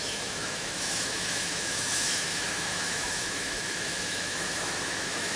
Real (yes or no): no